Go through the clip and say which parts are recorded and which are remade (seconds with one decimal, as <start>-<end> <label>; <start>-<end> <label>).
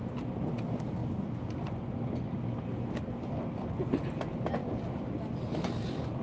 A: 0.0-6.2 recorded